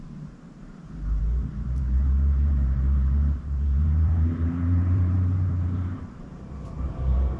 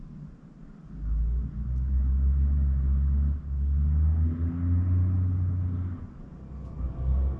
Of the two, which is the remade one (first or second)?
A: first